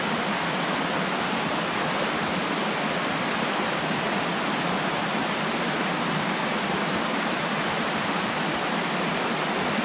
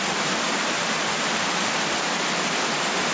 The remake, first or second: second